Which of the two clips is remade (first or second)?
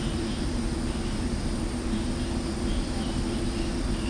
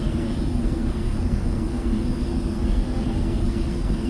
second